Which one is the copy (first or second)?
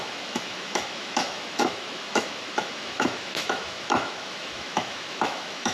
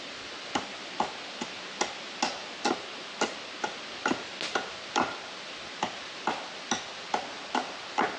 first